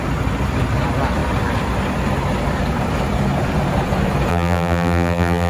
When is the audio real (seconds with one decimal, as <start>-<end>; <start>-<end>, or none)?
0.0-4.3